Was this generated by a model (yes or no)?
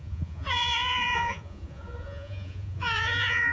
yes